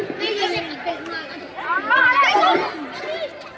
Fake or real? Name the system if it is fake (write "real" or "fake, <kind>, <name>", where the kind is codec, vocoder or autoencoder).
real